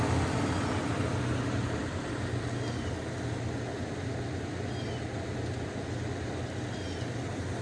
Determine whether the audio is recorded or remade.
recorded